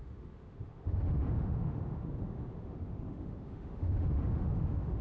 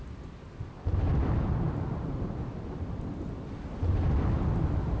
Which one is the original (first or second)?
second